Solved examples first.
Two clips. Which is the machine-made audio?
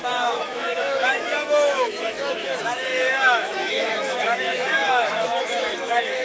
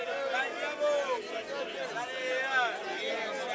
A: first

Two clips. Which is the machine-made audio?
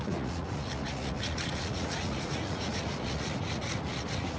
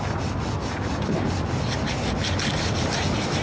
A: first